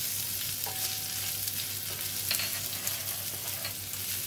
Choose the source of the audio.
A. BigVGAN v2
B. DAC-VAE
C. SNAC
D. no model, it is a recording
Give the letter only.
D